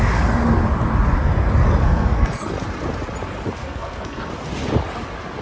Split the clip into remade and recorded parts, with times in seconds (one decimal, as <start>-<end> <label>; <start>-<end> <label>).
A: 0.0-1.8 recorded; 1.8-2.5 remade; 2.5-3.6 recorded; 3.6-4.3 remade; 4.3-5.4 recorded